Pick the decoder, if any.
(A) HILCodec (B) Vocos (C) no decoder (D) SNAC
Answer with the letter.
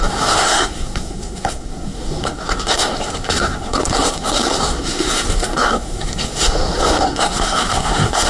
D